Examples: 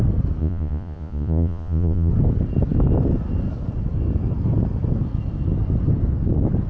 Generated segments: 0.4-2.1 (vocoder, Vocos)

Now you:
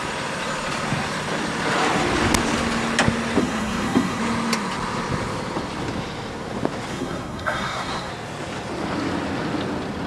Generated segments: 3.4-4.2 (codec, SNAC); 6.9-8.1

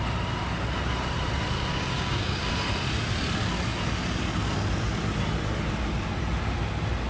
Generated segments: 1.7-2.5 (codec, DAC)

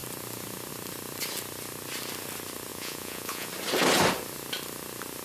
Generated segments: 2.7-3.5 (vocoder, Vocos)

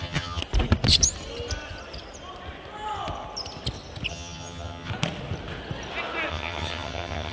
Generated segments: 0.0-0.4 (vocoder, HiFi-GAN); 4.1-4.9; 6.3-7.3